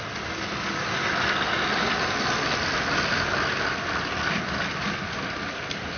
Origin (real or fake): real